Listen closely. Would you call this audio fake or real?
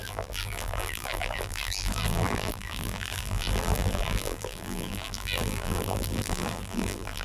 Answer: fake